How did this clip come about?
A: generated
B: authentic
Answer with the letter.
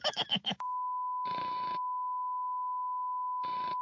A